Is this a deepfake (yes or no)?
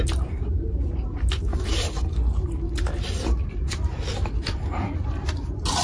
no